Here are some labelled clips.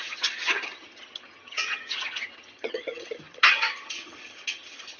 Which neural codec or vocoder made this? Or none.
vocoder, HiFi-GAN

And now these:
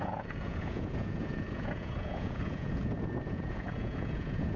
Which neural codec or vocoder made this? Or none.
vocoder, Vocos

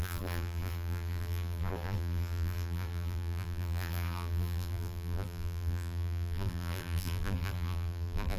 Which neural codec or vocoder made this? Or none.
vocoder, BigVGAN v2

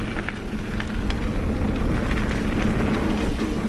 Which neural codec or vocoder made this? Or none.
none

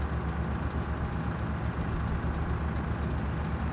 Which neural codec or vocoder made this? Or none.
none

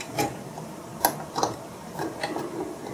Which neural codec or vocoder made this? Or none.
none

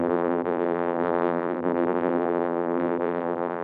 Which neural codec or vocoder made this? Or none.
vocoder, BigVGAN v2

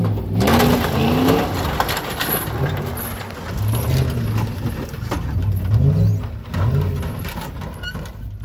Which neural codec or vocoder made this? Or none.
none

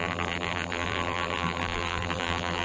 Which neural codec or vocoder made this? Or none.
vocoder, BigVGAN v2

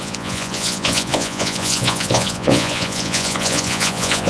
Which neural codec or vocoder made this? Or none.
vocoder, Vocos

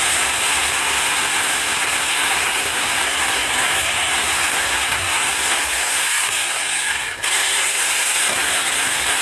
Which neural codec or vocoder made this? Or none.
codec, SNAC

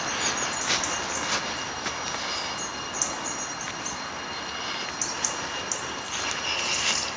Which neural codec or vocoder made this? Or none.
none